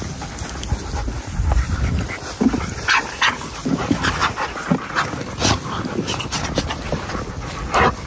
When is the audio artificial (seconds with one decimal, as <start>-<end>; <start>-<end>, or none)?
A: none